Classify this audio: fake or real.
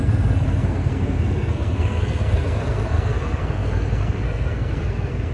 fake